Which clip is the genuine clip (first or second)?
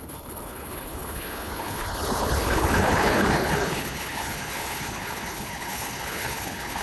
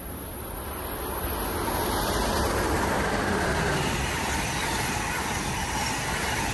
second